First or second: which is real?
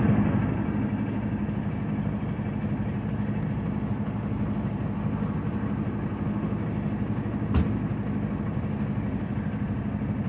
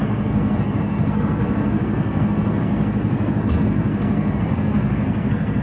first